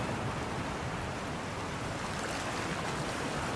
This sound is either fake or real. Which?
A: real